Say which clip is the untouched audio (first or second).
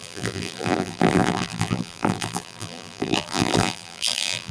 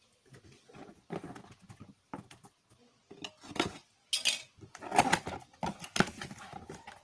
second